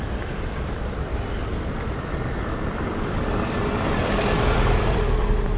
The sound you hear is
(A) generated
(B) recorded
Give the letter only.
A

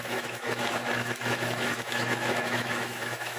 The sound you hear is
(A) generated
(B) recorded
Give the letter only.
A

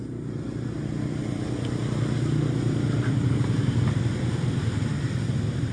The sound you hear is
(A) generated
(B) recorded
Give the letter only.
B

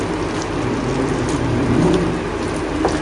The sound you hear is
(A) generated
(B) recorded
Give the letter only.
B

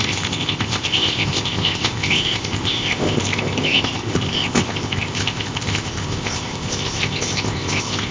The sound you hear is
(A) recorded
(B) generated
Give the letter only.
B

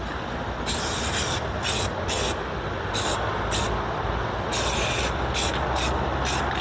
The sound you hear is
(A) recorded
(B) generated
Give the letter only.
A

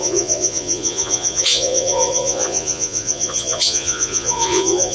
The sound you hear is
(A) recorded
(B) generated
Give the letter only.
B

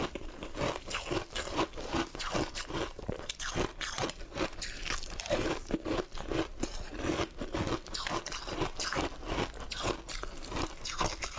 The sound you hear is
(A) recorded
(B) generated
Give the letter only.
A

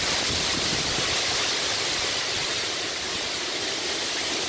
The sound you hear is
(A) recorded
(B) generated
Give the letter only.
A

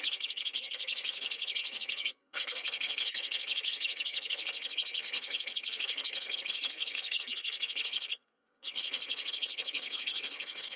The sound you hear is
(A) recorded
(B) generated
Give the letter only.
B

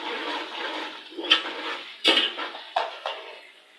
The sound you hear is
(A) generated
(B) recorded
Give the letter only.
A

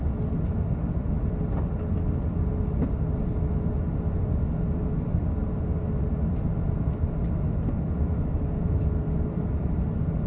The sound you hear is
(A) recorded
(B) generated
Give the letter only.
A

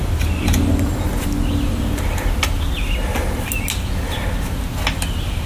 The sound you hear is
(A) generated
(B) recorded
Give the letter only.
B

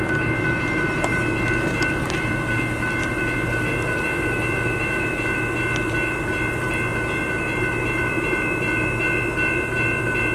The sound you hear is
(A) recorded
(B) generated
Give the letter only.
B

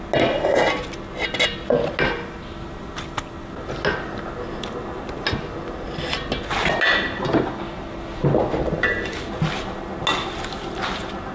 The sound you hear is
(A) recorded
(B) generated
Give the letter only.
A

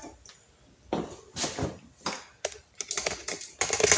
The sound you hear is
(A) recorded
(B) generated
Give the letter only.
A